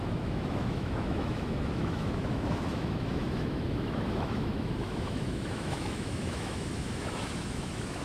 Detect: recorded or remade remade